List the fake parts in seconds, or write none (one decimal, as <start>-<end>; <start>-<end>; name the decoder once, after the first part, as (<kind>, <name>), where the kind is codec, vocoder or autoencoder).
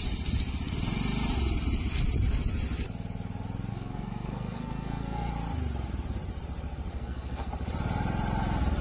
3.7-5.3 (codec, SNAC); 6.9-7.5